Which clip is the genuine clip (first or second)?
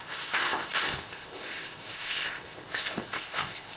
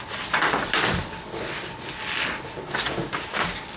second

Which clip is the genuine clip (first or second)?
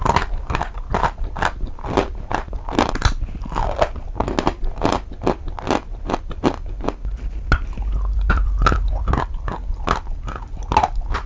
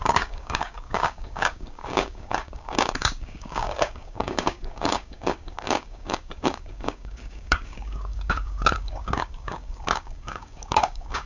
first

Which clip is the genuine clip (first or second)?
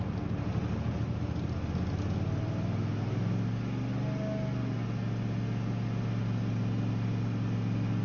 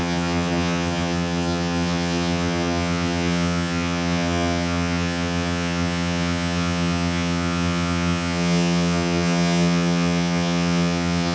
first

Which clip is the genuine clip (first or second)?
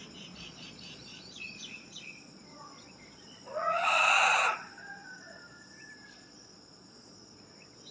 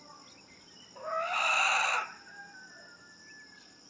second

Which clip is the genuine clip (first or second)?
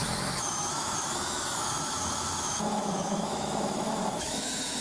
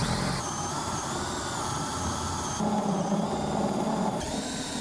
second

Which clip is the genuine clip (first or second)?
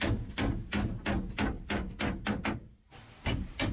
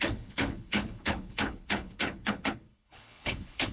first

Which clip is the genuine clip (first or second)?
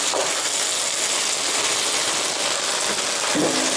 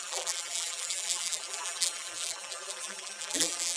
first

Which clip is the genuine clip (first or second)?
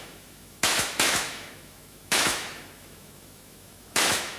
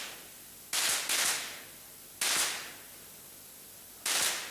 second